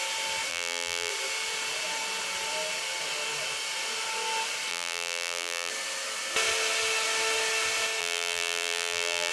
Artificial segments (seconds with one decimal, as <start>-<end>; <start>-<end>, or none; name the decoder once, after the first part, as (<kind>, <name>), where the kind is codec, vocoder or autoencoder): 0.5-1.1 (vocoder, BigVGAN v2); 4.7-5.7; 8.0-9.3